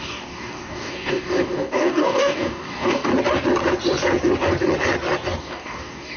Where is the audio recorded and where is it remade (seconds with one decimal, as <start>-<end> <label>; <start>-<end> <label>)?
0.0-3.1 remade; 3.1-5.4 recorded; 5.4-6.2 remade